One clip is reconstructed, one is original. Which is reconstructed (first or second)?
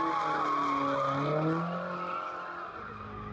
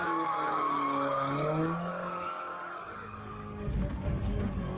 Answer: second